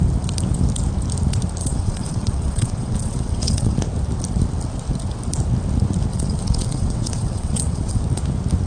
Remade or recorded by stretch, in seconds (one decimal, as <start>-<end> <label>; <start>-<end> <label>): 0.0-1.6 recorded; 1.6-3.8 remade; 3.8-6.1 recorded; 6.1-8.0 remade; 8.0-8.7 recorded